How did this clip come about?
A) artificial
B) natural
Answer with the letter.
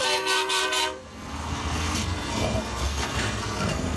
A